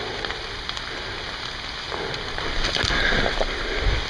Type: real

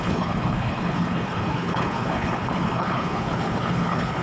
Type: fake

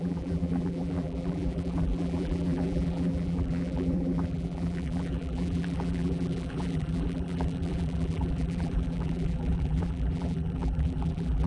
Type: fake